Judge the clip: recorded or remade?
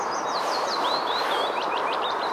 remade